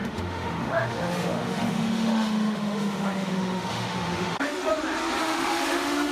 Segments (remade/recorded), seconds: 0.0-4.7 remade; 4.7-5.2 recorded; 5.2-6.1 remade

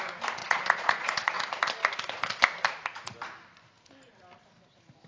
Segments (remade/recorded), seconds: 0.0-0.4 recorded; 0.4-1.3 remade; 1.3-5.1 recorded

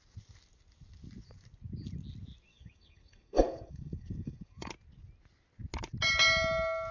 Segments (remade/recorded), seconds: 0.0-2.5 recorded; 2.5-4.7 remade; 4.7-6.9 recorded

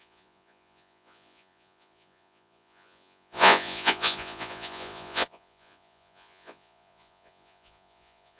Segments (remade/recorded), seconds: 0.0-8.4 remade

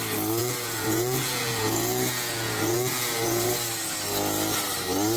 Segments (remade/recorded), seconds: 0.0-0.4 recorded; 0.4-3.5 remade; 3.5-5.2 recorded

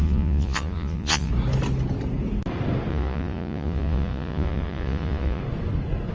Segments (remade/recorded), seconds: 0.0-1.3 remade; 1.3-2.9 recorded; 2.9-5.4 remade; 5.4-6.1 recorded